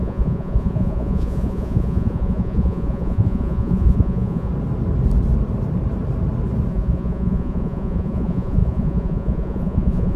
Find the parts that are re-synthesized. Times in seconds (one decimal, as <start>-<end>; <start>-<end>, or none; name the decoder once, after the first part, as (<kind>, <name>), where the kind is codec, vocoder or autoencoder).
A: 0.0-4.5 (vocoder, Vocos); 6.7-10.2